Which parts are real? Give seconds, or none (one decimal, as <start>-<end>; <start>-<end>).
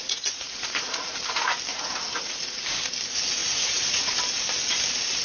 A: 1.2-1.7; 2.6-3.4; 4.1-5.2